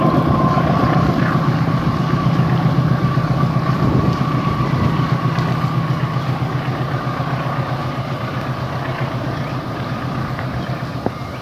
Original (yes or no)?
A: yes